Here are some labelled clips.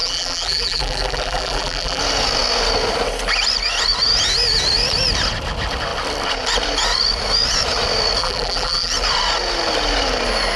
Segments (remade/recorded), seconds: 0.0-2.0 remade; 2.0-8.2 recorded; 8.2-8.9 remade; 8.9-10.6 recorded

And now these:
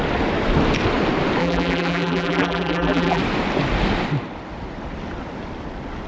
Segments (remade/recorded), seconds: 0.0-1.4 recorded; 1.4-3.2 remade; 3.2-6.1 recorded

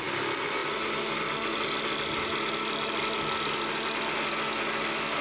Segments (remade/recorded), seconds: 0.0-5.2 recorded

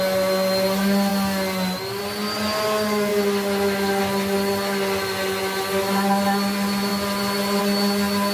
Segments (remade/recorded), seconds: 0.0-8.3 recorded

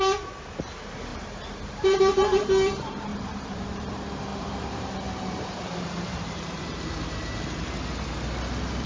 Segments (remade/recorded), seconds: 0.0-3.1 recorded; 3.1-3.9 remade; 3.9-4.3 recorded; 4.3-7.7 remade; 7.7-8.9 recorded